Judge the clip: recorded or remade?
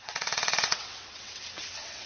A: remade